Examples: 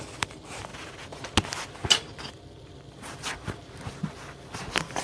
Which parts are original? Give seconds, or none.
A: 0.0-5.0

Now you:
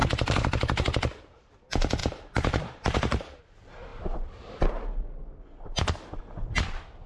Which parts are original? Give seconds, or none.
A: 1.5-2.0; 3.4-7.1

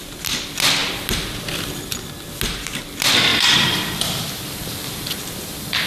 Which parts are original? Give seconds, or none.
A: 0.0-3.3

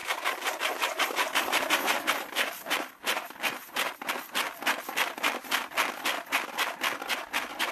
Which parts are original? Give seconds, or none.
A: 4.1-7.7